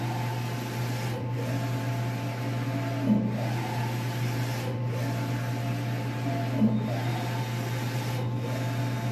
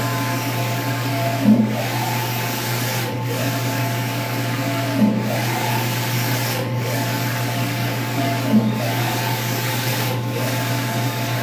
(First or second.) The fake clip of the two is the second